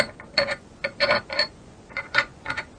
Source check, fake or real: fake